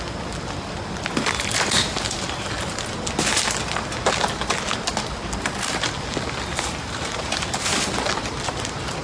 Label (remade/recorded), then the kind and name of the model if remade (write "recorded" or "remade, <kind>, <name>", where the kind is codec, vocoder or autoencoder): recorded